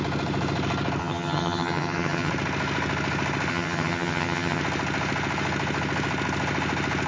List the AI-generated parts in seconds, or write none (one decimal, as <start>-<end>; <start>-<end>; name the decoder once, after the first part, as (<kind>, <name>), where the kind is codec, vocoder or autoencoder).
1.0-2.3 (vocoder, HiFi-GAN); 3.5-4.6